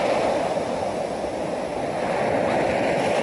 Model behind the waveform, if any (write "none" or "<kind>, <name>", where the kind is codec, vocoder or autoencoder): none